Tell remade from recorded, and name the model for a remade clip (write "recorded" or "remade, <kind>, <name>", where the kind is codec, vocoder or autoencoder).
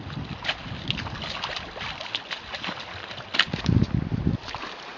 recorded